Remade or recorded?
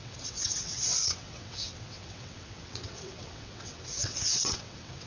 remade